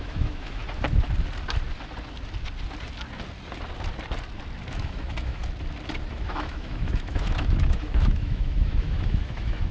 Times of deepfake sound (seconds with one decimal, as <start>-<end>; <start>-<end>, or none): 0.0-0.6; 4.7-5.4; 6.1-9.7